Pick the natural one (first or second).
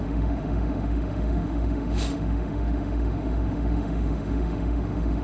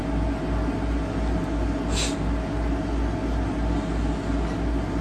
second